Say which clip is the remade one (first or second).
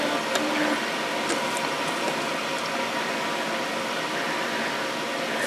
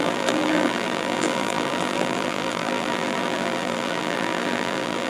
second